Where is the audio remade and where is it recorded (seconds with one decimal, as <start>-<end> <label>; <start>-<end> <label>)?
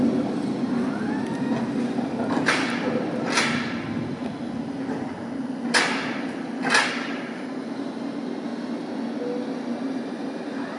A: 0.0-10.8 recorded